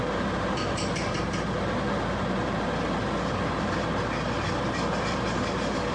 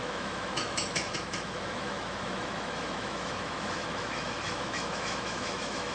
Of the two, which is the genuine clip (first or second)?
first